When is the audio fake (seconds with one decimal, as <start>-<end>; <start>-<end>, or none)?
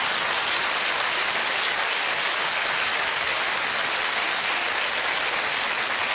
1.4-3.4